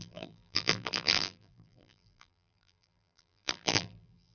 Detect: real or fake fake